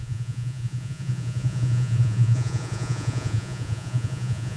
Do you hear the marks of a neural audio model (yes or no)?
yes